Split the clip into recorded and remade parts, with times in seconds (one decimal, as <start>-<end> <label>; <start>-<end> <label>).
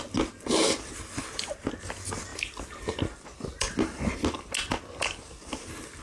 0.0-6.0 recorded